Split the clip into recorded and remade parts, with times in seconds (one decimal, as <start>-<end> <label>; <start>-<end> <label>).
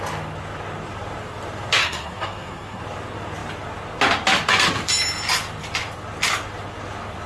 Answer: 0.0-1.8 recorded; 1.8-2.8 remade; 2.8-7.3 recorded